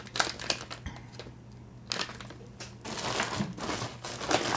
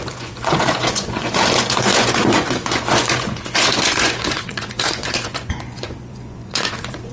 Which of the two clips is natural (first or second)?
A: first